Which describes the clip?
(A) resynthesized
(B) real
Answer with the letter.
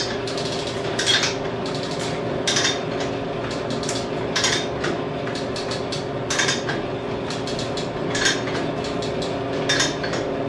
B